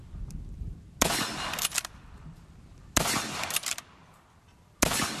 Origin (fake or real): real